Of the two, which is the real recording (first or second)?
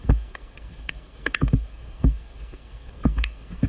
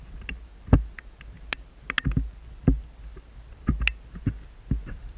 second